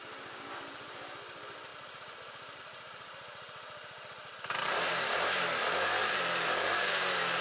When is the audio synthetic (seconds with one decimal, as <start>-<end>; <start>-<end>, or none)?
0.0-7.4

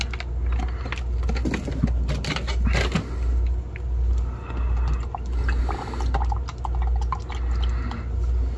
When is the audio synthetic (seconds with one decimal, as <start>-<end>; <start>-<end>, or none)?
none